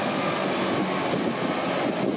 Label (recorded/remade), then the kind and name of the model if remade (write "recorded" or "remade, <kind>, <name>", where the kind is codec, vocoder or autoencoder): recorded